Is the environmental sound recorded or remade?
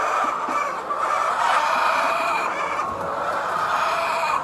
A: recorded